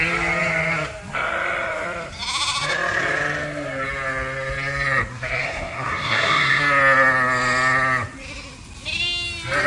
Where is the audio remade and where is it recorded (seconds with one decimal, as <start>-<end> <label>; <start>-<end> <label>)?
0.0-5.4 recorded; 5.4-6.6 remade; 6.6-9.7 recorded